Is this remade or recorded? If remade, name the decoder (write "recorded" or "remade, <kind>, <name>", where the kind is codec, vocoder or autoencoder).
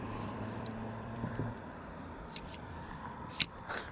remade, vocoder, BigVGAN v2